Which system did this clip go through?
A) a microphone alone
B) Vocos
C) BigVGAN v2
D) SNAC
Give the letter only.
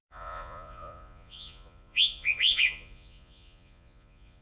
B